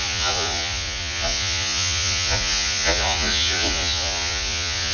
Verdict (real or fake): fake